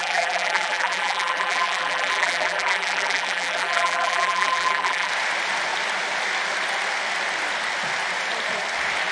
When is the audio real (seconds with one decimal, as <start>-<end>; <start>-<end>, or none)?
5.1-9.1